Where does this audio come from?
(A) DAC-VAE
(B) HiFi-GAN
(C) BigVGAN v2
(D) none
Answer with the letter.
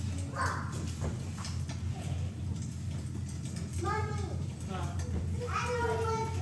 D